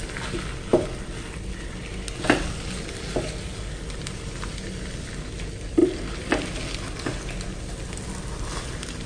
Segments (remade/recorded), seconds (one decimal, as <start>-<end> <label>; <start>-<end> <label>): 0.0-9.1 recorded